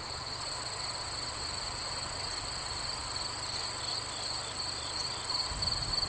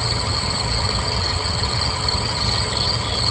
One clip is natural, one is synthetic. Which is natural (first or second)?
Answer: first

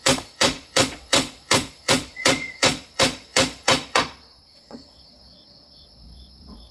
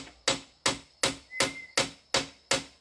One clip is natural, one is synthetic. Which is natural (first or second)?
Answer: second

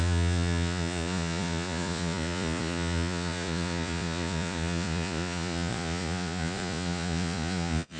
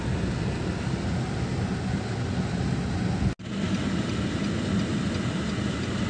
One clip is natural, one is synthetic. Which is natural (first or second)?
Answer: second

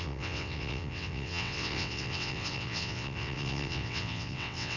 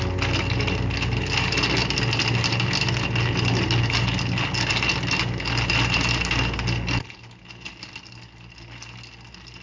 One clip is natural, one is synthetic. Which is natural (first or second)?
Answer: second